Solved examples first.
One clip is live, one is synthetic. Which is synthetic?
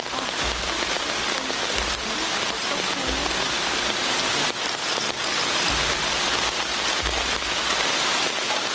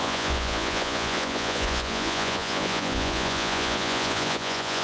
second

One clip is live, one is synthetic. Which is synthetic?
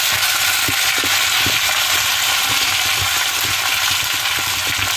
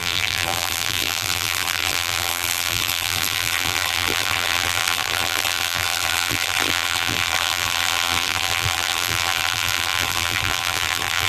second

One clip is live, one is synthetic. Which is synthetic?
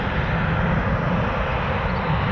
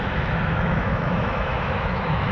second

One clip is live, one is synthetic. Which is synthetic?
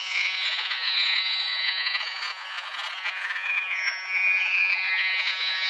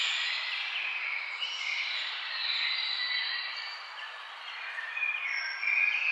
first